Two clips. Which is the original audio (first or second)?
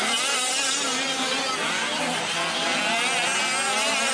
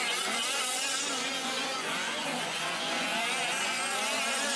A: first